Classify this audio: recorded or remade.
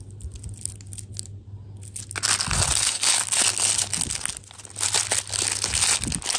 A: recorded